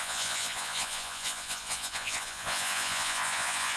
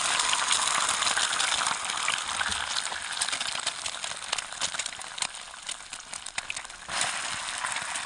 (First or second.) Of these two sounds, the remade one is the first